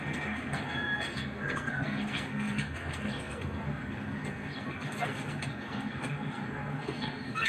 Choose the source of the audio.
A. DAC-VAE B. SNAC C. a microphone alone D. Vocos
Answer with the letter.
B